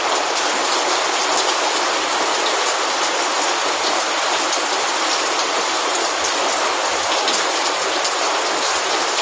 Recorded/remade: recorded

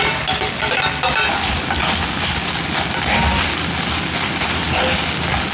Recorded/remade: recorded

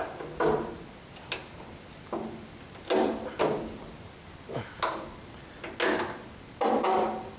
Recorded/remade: recorded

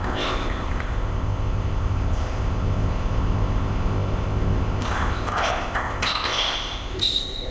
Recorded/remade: remade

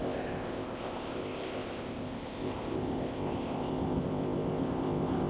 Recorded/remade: remade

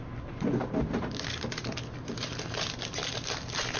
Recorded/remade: recorded